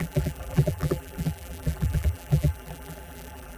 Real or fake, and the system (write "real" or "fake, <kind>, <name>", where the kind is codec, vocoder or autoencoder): fake, vocoder, BigVGAN v2